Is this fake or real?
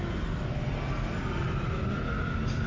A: real